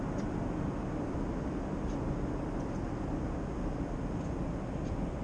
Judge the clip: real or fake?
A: real